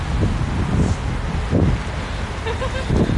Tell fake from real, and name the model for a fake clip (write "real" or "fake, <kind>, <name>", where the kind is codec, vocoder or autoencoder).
real